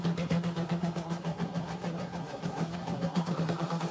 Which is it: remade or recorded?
remade